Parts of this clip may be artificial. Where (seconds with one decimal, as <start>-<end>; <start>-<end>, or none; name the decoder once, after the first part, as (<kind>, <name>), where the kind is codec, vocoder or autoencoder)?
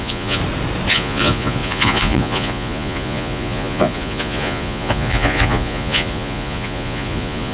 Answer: 0.0-0.4 (vocoder, Vocos); 0.9-7.5